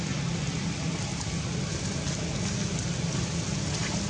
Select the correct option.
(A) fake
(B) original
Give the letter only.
B